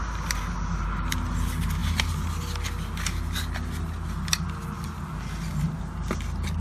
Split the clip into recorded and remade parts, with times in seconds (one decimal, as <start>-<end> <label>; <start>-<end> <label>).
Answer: 0.0-6.6 recorded